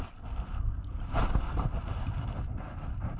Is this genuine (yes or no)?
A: yes